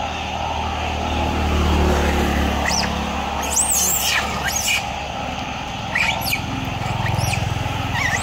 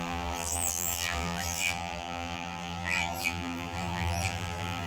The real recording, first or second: first